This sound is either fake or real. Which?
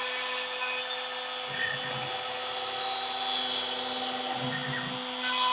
real